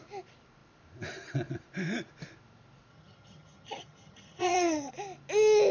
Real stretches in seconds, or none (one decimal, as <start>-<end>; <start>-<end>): 0.0-2.9; 4.9-5.7